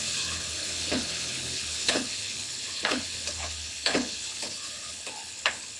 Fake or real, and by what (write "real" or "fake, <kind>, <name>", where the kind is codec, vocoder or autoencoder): fake, codec, HILCodec